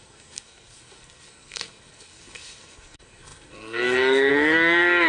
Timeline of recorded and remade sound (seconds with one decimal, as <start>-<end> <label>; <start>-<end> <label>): 0.0-5.1 remade